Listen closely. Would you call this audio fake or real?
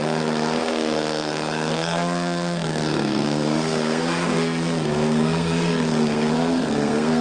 fake